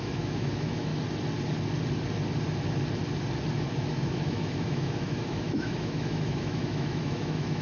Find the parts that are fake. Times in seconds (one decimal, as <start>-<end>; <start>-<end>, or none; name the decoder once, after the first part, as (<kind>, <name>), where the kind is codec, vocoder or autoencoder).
0.0-0.9 (autoencoder, DAC-VAE); 3.8-7.6